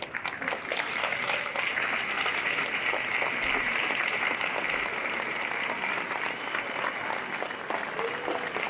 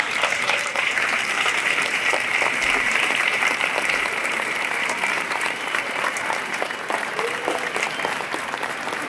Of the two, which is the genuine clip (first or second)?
first